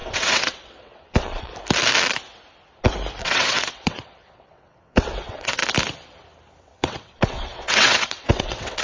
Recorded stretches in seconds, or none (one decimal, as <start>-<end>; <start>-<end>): 1.5-3.2; 5.6-6.6